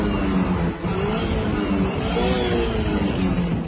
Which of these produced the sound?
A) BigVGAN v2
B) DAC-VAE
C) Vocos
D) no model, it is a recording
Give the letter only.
D